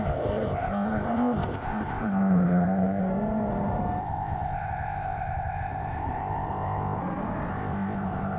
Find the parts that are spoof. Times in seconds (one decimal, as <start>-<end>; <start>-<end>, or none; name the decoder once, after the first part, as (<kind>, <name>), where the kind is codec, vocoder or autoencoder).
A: 0.0-3.0 (codec, ZipCodec); 4.0-7.0; 7.5-8.4